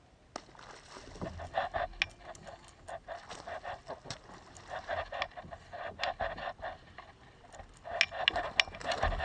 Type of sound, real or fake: real